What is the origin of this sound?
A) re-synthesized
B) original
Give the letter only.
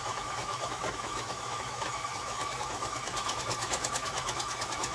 A